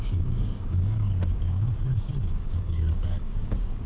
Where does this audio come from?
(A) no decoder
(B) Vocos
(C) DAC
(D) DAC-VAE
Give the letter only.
C